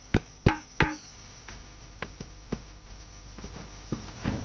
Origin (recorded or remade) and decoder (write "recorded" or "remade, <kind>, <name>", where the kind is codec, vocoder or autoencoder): recorded